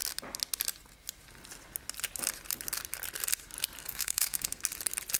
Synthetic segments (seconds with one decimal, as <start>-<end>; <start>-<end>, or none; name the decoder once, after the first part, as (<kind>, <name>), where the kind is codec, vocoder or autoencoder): 3.8-4.6 (codec, SNAC)